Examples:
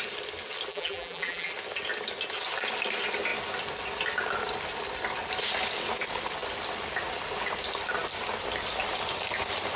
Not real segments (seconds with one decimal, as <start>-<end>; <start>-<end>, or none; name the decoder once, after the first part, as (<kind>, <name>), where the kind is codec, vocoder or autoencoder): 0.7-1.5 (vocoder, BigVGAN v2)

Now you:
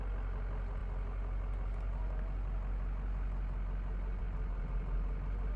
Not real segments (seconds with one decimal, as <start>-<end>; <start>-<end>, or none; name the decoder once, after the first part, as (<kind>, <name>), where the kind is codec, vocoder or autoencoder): none

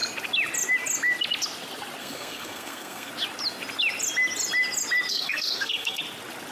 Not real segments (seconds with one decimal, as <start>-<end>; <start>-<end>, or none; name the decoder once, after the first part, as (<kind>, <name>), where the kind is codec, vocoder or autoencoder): 2.0-3.1 (codec, SNAC); 5.1-6.0

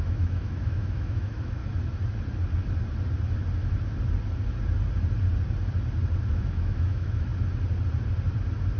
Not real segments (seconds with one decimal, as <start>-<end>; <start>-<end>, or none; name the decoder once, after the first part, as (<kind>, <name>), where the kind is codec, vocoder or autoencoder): 0.0-1.6 (autoencoder, DAC-VAE); 6.3-7.3

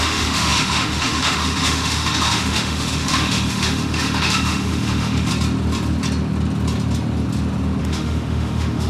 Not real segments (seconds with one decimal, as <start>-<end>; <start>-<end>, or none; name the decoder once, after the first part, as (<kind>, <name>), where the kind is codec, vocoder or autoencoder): 0.0-5.3 (autoencoder, DAC-VAE); 7.8-8.9

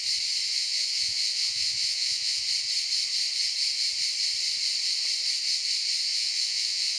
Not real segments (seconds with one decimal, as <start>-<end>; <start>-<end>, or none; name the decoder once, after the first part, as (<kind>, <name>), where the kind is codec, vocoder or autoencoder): 0.5-2.4 (vocoder, Vocos); 6.1-7.0

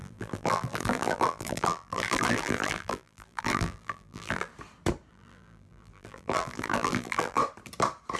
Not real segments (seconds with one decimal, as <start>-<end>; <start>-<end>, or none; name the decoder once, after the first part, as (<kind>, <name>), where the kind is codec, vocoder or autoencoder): 0.0-4.5 (vocoder, BigVGAN v2); 5.1-7.4